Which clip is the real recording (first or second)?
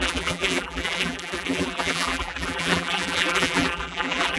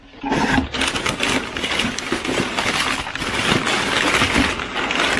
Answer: second